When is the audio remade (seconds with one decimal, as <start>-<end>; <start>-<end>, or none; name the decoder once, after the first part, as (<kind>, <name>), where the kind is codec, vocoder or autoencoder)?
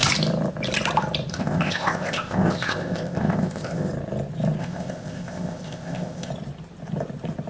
1.3-3.9 (codec, ZipCodec); 4.6-6.3